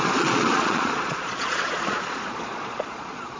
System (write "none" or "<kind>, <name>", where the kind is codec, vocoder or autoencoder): vocoder, Vocos